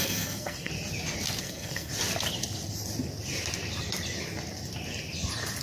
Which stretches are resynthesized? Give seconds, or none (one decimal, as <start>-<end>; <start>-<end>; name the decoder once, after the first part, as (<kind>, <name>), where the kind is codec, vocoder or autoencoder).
0.0-0.7 (codec, SNAC); 1.4-1.9